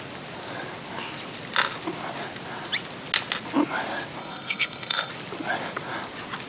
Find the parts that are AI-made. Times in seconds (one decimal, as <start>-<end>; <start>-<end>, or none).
4.2-5.1

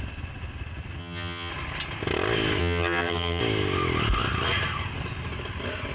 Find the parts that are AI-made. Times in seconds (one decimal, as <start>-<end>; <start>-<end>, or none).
1.0-1.5; 2.6-3.4